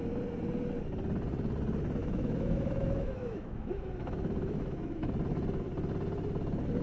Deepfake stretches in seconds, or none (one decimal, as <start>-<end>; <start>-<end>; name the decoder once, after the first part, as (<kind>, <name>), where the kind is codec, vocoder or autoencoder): 2.0-5.1 (autoencoder, DAC-VAE)